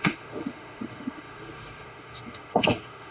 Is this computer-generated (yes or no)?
yes